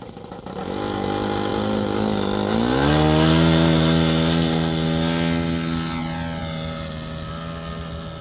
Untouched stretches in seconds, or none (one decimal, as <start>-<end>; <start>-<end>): 0.0-8.2